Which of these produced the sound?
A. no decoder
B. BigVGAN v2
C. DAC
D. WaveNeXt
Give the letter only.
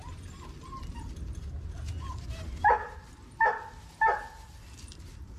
A